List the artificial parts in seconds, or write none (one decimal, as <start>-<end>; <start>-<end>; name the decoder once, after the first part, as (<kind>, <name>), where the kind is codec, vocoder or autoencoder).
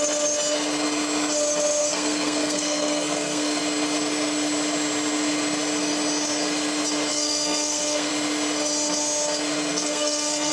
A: 1.8-3.6 (codec, SNAC); 7.1-8.1; 9.7-10.5